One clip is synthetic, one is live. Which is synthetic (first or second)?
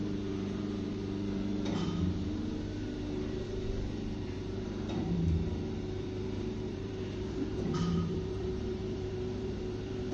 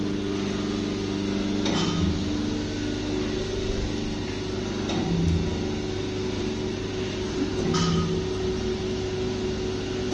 first